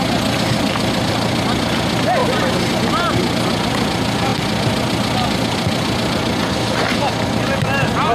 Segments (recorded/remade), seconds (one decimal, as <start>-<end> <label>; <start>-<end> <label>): 0.0-2.2 recorded; 2.2-2.7 remade; 2.7-8.1 recorded